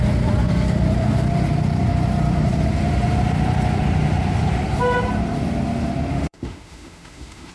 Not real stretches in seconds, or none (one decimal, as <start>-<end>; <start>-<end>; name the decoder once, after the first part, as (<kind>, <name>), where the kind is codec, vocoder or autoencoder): 6.1-7.5 (autoencoder, DAC-VAE)